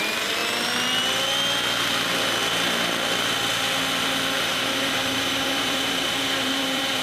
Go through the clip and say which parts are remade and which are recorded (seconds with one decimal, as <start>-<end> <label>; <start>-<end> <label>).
0.0-0.4 remade; 0.4-4.5 recorded; 4.5-7.0 remade